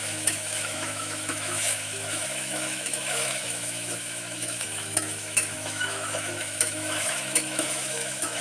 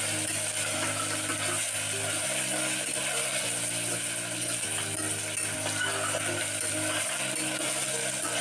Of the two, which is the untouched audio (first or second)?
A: second